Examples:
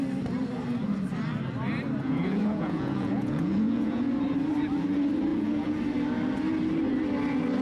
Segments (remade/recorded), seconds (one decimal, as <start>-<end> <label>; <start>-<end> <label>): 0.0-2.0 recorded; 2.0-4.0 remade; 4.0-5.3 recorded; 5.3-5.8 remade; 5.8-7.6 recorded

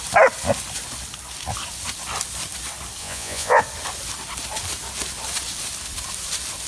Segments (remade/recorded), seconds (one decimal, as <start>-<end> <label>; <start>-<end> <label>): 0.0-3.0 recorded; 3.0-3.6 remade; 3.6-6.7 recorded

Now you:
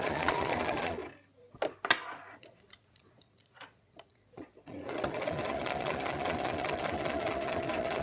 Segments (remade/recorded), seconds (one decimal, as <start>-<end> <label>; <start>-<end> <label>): 0.0-1.0 remade; 1.0-2.3 recorded; 2.3-8.0 remade